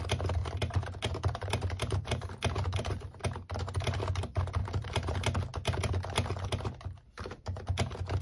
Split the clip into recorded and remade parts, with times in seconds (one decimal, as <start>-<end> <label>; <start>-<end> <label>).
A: 0.0-0.4 recorded; 0.4-2.3 remade; 2.3-4.6 recorded; 4.6-5.1 remade; 5.1-8.2 recorded